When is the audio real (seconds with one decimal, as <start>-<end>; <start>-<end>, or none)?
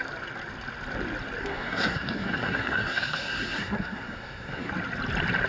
0.0-1.4; 4.7-5.5